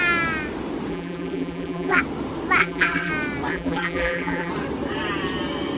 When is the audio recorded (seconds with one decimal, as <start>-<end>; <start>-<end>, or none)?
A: 0.0-0.9; 2.0-2.6; 3.1-3.5; 4.5-5.8